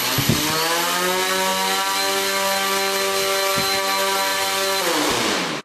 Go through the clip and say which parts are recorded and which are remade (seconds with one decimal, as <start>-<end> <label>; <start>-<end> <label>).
0.0-5.6 recorded